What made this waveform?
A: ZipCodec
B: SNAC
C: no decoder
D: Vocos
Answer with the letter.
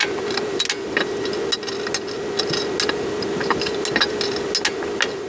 C